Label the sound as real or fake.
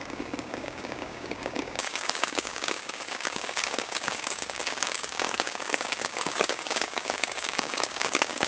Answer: fake